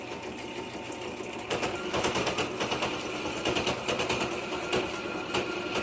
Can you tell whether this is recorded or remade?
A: recorded